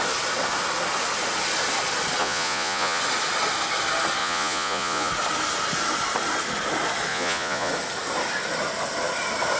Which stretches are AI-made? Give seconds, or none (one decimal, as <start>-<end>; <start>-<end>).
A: 2.2-3.0; 4.2-5.1; 7.1-7.7